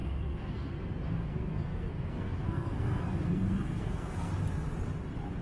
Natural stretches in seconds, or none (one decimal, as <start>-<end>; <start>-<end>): 0.7-1.1; 4.3-5.4